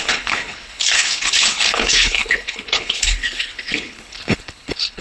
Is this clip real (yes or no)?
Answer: no